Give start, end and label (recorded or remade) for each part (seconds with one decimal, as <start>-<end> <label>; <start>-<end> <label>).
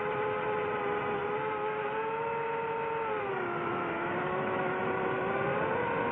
0.0-3.7 recorded; 3.7-4.8 remade; 4.8-6.1 recorded